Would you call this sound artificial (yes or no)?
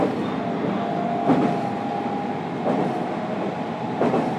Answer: no